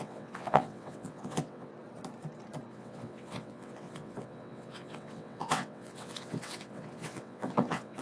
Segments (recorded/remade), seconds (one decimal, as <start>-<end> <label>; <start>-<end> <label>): 0.0-1.7 remade; 1.7-2.7 recorded; 2.7-8.0 remade